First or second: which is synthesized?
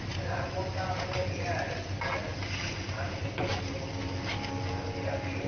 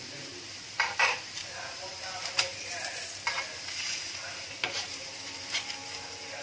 second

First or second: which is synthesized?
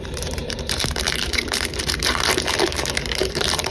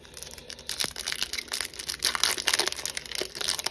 first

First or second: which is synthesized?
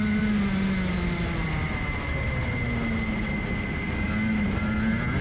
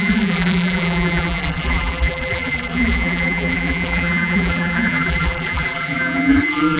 second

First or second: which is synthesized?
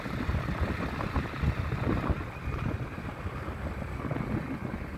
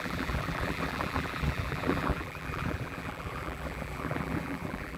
second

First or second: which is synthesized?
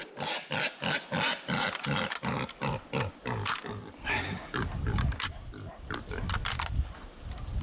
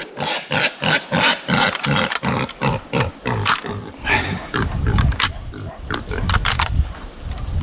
second